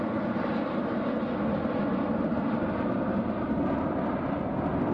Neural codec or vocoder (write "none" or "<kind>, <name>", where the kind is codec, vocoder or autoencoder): none